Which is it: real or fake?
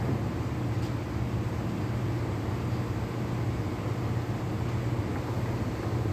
real